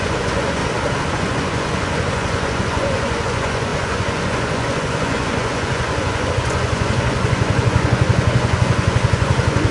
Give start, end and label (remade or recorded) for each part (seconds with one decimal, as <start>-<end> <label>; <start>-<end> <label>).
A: 0.0-0.6 remade; 0.6-1.1 recorded; 1.1-9.7 remade